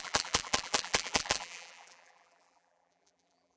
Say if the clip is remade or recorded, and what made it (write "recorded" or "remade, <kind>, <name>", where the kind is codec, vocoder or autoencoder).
remade, vocoder, BigVGAN v2